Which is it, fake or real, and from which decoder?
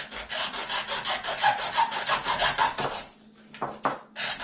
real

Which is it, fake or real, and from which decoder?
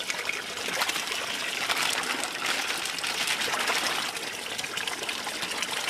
real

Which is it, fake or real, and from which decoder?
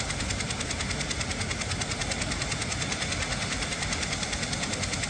real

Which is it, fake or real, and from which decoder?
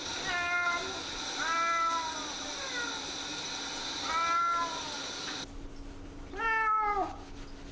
real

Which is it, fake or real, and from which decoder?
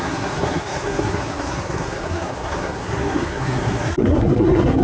fake, codec, SNAC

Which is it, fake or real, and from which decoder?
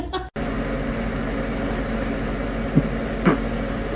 real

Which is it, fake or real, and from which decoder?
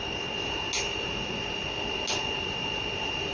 real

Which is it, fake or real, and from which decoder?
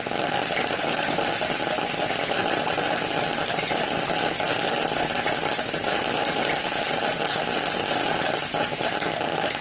real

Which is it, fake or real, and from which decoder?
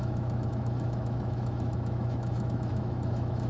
fake, autoencoder, DAC-VAE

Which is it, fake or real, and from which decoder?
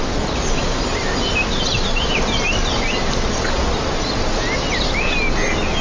real